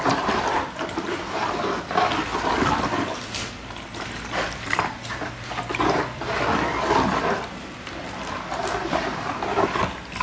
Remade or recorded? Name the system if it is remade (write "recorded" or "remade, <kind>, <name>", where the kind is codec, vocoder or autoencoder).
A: recorded